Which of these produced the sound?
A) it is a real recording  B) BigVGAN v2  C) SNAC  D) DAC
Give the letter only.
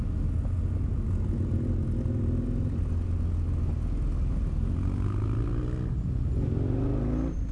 A